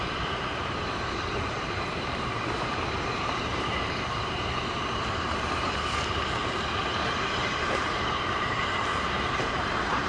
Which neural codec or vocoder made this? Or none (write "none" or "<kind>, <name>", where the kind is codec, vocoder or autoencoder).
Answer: vocoder, BigVGAN v2